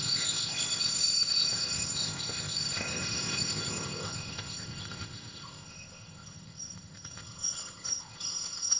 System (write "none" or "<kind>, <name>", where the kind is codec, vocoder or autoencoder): codec, ZipCodec